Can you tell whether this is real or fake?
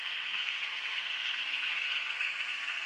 fake